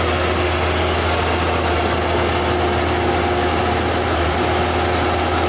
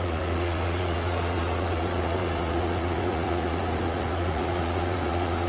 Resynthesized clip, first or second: second